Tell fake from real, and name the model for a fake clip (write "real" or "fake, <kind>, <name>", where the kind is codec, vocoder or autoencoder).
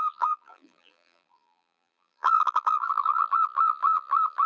fake, vocoder, BigVGAN v2